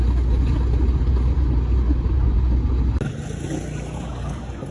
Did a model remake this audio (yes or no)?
no